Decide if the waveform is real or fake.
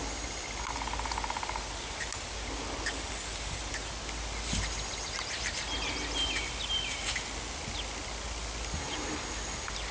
real